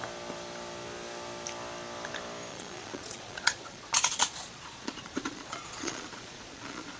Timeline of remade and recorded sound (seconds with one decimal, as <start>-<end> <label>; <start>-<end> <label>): 0.0-2.5 recorded; 2.5-7.0 remade